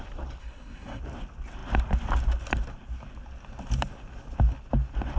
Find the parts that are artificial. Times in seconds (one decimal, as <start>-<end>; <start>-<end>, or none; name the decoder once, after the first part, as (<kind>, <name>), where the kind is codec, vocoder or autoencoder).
0.4-1.0 (codec, SNAC)